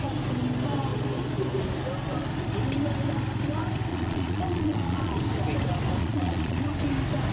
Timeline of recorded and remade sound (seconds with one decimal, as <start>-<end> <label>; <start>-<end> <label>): 0.0-3.9 recorded; 3.9-5.2 remade; 5.2-6.0 recorded; 6.0-6.6 remade; 6.6-7.3 recorded